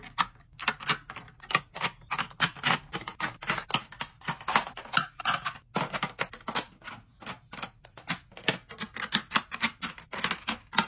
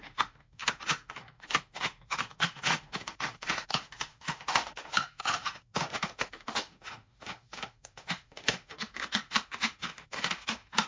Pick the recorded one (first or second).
first